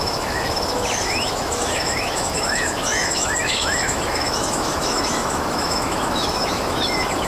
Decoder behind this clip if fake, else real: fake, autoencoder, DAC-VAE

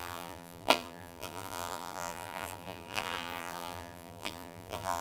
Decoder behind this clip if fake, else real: fake, vocoder, BigVGAN v2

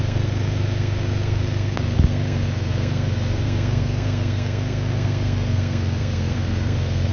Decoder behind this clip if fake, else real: fake, codec, SNAC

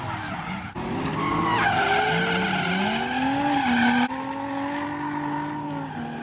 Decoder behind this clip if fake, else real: real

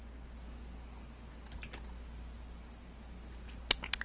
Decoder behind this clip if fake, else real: real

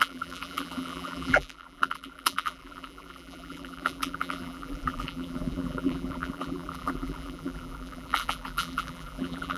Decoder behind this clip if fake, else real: fake, vocoder, BigVGAN v2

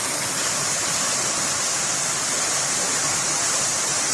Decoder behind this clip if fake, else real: fake, vocoder, BigVGAN v2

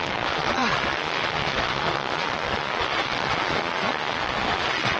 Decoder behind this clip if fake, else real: fake, vocoder, Vocos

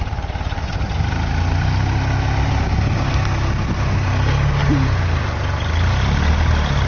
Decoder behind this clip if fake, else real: real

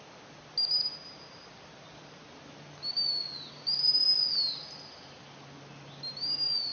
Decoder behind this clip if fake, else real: real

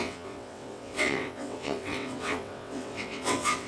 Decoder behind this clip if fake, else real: fake, vocoder, WaveNeXt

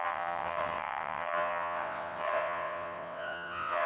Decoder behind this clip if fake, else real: fake, vocoder, WaveNeXt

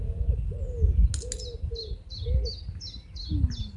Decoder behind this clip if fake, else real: real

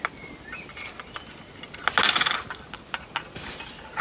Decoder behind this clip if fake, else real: real